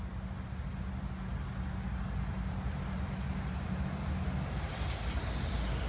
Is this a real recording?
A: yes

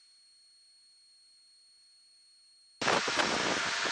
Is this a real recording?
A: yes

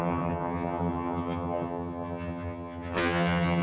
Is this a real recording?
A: no